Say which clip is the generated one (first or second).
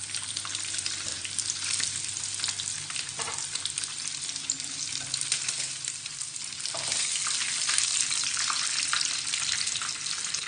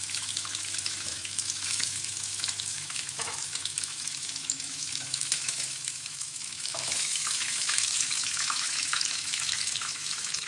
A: second